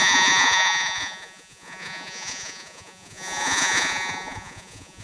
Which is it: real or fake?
fake